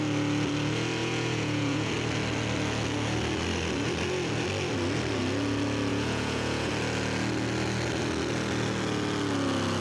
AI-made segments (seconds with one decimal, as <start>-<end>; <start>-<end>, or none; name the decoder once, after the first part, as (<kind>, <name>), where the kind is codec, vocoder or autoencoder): 1.0-1.9 (vocoder, Vocos); 5.9-6.7